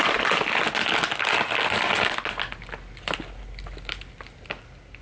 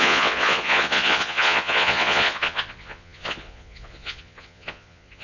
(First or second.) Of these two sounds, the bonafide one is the first